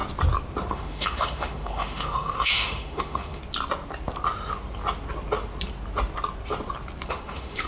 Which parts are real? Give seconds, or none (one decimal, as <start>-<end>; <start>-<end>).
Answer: 0.0-0.7; 3.4-7.1